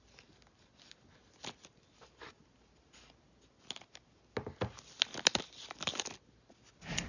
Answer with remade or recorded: recorded